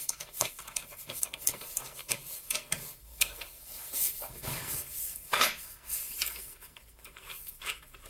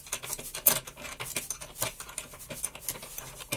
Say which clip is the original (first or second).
second